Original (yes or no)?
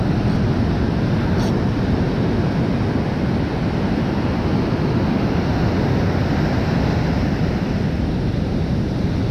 yes